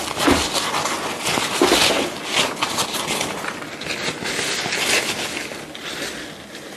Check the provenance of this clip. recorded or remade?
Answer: recorded